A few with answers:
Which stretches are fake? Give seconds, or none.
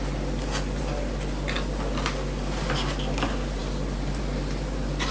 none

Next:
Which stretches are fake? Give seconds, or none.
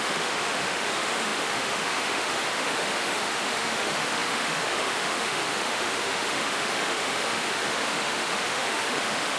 0.0-9.4 (autoencoder, DAC-VAE)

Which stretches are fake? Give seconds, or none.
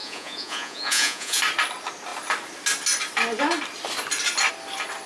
0.0-1.4 (vocoder, Vocos)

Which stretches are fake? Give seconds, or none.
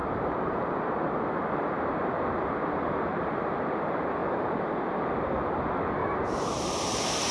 0.0-0.6 (vocoder, BigVGAN v2); 3.1-3.8; 6.0-6.6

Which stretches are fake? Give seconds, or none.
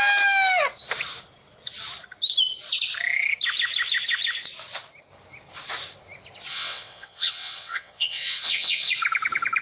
6.5-8.9 (vocoder, WaveNeXt)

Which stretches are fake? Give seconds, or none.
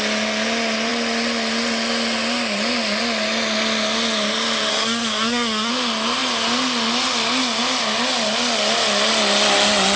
4.7-5.7 (codec, SNAC)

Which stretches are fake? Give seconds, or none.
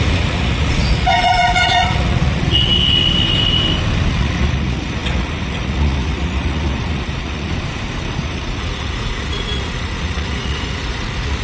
0.0-2.7 (vocoder, Vocos); 4.1-7.5; 8.2-11.4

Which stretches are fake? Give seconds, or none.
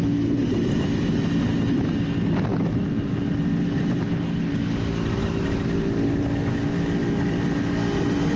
none